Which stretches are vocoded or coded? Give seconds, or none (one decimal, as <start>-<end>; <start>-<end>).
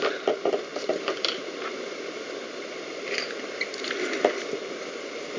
0.7-3.2